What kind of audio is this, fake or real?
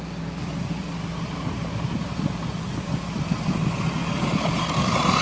real